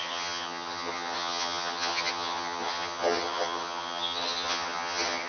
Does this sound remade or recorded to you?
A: remade